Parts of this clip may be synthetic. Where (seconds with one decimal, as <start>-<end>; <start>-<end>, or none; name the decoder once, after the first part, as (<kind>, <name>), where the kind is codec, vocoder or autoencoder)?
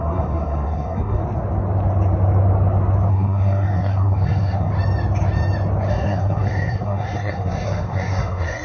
0.0-1.2 (codec, SNAC); 3.1-4.7; 5.9-8.6